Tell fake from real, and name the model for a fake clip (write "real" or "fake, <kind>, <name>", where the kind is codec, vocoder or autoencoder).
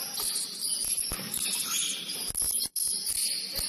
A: real